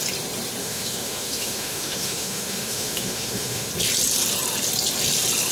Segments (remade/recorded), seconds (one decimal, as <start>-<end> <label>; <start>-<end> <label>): 0.0-0.6 recorded; 0.6-3.7 remade; 3.7-5.5 recorded